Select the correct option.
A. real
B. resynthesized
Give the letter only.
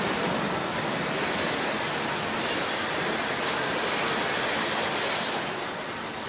A